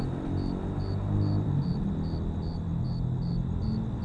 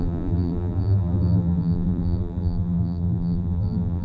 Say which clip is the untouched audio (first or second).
first